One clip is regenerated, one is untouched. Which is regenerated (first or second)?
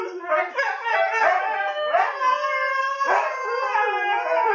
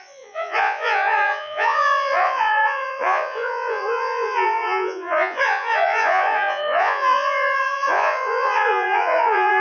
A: second